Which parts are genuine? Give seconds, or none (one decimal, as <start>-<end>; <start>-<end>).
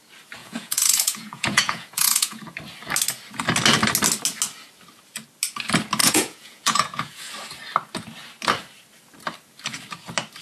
0.0-0.4; 2.4-6.0; 7.3-10.4